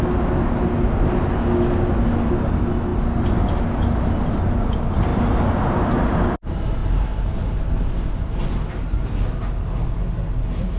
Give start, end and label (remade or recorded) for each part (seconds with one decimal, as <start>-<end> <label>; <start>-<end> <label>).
0.0-10.8 recorded